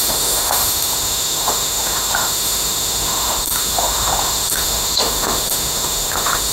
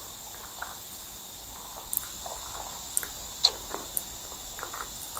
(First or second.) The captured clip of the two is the second